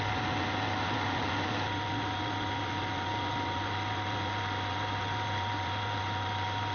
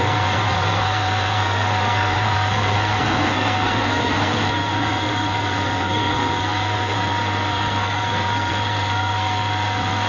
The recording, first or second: first